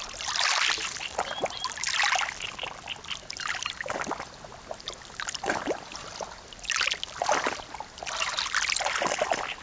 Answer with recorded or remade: recorded